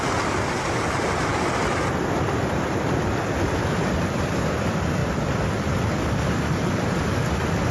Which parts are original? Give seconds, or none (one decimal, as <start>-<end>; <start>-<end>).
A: 0.0-7.7

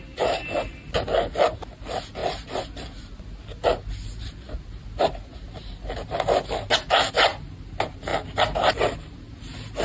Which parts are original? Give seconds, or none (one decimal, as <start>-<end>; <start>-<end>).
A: 0.0-9.8